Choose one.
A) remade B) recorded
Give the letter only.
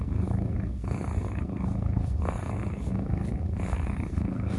A